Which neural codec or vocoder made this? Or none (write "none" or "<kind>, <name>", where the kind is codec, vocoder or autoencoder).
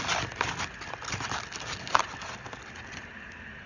none